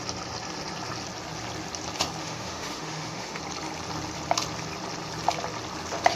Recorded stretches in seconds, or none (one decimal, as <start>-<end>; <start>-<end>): 0.0-2.2; 3.4-6.2